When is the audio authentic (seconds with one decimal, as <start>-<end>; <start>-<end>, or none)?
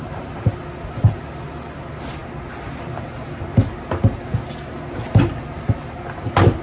0.6-6.6